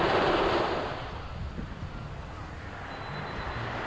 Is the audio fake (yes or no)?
no